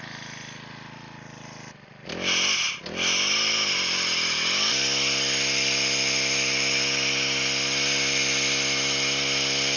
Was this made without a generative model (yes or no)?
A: yes